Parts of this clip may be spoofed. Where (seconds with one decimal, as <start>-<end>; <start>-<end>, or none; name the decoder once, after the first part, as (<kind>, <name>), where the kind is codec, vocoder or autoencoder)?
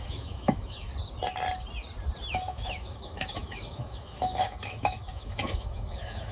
0.0-0.9 (autoencoder, DAC-VAE); 2.3-6.3